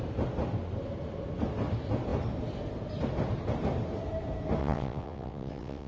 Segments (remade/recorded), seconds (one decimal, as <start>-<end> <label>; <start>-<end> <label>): 0.0-4.6 recorded; 4.6-5.9 remade